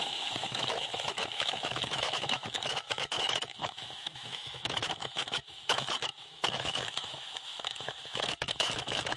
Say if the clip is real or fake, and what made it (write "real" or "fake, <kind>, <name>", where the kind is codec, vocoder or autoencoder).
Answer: fake, autoencoder, DAC-VAE